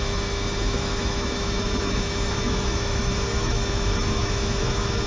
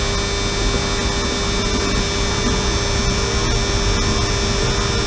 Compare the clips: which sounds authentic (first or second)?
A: second